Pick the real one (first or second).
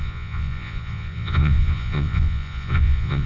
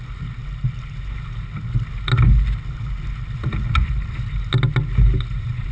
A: second